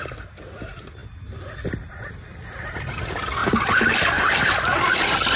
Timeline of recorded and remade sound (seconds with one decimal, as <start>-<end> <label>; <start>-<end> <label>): 0.0-5.4 recorded